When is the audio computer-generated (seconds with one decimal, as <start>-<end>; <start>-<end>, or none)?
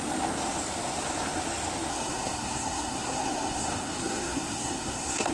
1.9-5.3